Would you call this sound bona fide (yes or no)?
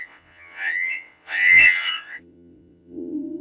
no